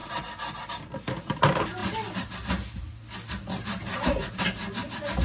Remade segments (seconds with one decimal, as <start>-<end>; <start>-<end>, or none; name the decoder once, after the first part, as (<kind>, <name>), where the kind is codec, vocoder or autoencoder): none